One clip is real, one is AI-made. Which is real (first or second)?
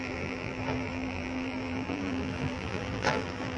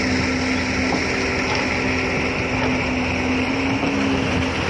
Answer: second